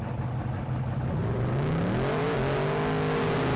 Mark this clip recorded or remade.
recorded